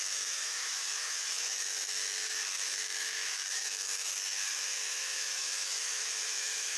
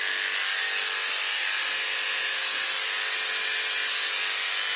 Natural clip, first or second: second